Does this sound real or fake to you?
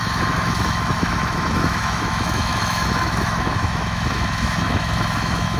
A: fake